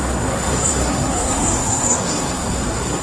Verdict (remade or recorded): remade